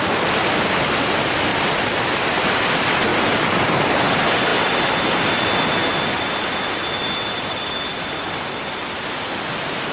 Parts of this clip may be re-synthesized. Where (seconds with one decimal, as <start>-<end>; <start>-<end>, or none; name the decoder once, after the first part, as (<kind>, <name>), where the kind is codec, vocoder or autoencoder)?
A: none